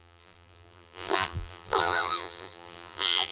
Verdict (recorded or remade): remade